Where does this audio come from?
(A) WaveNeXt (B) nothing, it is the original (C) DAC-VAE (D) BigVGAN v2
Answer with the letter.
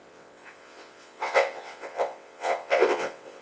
A